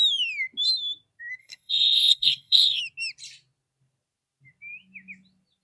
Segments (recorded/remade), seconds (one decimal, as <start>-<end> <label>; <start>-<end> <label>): 0.0-1.4 recorded; 1.4-2.8 remade; 2.8-5.6 recorded